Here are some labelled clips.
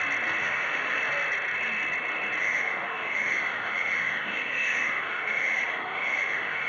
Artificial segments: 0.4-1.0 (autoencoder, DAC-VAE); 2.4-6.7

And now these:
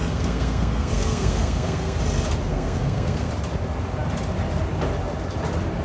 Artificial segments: 0.0-2.0 (codec, SNAC); 2.5-3.3

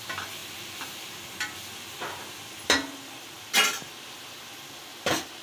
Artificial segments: none

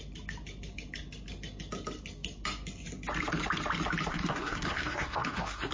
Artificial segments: 4.1-5.7 (codec, SNAC)

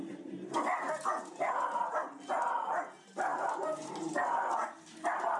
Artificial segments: none

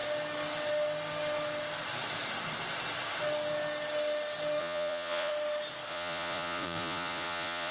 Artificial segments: 4.6-5.3 (vocoder, Vocos); 5.9-7.7

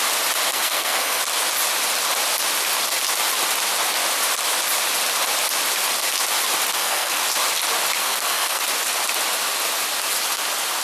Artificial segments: 0.5-1.2 (codec, SNAC); 6.7-7.2; 8.0-8.6

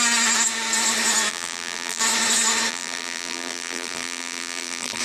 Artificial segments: 1.3-2.0 (vocoder, BigVGAN v2); 2.7-5.0